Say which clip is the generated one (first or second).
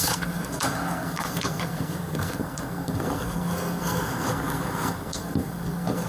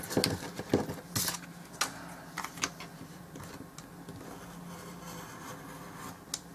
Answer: first